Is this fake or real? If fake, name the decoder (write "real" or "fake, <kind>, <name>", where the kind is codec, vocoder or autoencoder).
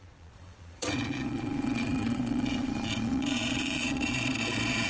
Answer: fake, vocoder, Vocos